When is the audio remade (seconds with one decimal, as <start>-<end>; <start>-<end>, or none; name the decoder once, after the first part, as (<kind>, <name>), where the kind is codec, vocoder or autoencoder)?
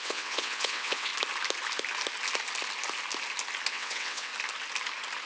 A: 0.0-1.1 (vocoder, WaveNeXt); 3.7-4.3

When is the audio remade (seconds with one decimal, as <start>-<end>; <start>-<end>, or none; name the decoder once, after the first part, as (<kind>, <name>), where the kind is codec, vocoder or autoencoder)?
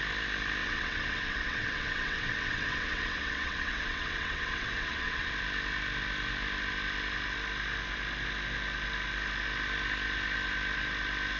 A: 0.6-5.3 (vocoder, WaveNeXt)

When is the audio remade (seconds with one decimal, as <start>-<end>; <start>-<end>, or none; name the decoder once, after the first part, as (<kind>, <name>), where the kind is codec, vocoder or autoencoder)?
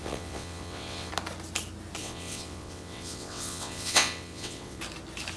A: 0.0-1.1 (vocoder, WaveNeXt); 2.0-4.8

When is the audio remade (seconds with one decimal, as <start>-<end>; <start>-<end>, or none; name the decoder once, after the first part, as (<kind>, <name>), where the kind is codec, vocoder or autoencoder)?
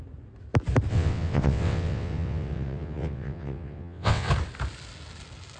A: 0.9-4.3 (vocoder, WaveNeXt)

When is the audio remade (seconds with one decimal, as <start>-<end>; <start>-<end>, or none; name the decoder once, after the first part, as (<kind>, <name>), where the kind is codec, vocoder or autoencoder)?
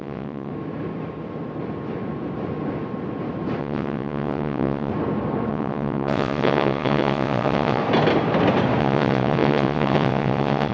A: 0.0-0.5 (vocoder, WaveNeXt); 3.6-4.9; 5.5-7.8; 8.8-10.7